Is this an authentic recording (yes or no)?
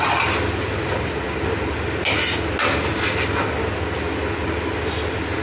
yes